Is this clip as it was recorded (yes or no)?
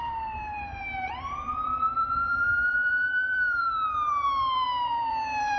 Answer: no